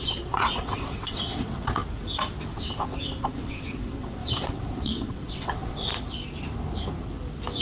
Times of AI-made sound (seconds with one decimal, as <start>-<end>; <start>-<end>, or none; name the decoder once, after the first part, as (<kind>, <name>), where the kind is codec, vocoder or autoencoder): 0.0-1.8 (vocoder, WaveNeXt); 2.5-5.9